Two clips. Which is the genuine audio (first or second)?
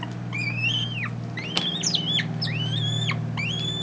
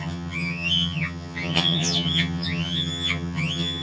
first